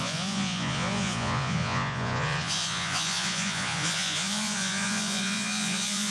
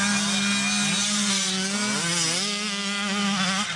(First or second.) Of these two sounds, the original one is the second